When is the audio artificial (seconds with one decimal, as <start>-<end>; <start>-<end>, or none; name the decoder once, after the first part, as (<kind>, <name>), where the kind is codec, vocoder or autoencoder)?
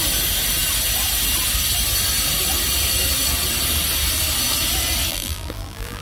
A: 5.1-6.0 (vocoder, BigVGAN v2)